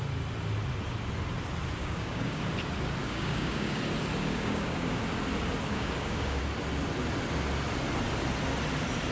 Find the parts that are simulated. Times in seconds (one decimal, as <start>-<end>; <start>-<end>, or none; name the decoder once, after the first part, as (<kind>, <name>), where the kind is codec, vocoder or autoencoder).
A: 1.8-2.4 (codec, DAC); 3.0-3.8; 4.2-5.0; 5.7-6.4